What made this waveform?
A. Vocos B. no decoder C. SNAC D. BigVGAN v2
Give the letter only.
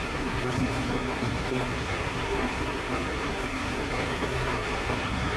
C